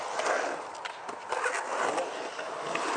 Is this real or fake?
real